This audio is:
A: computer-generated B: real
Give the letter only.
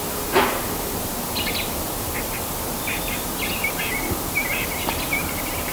B